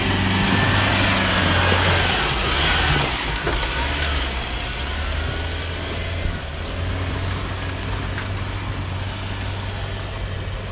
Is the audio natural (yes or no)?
yes